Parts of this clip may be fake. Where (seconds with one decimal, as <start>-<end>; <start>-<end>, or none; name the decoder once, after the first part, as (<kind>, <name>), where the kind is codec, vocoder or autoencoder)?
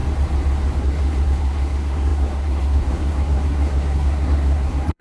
0.8-5.0 (codec, SNAC)